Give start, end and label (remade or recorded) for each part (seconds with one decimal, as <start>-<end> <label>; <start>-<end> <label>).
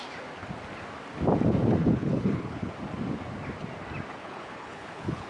0.0-1.8 recorded; 1.8-2.7 remade; 2.7-4.2 recorded; 4.2-5.3 remade